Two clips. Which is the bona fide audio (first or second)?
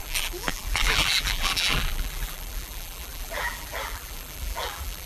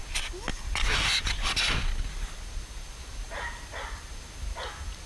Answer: second